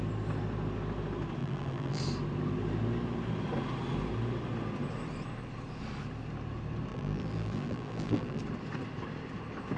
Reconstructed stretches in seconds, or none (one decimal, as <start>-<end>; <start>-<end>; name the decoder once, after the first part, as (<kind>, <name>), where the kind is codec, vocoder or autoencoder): 1.4-2.0 (vocoder, BigVGAN v2); 6.9-8.4